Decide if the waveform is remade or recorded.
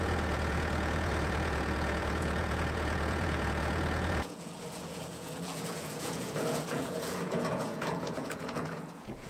remade